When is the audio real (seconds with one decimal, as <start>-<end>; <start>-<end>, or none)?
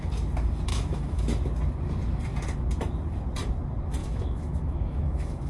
0.0-0.7; 1.2-4.0